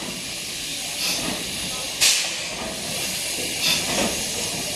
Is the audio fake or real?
real